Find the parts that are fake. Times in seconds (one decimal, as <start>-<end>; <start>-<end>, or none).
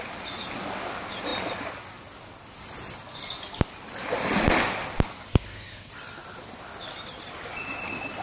5.3-5.9